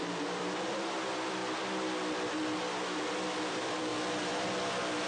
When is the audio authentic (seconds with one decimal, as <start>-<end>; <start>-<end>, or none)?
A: 1.4-3.5; 3.9-5.1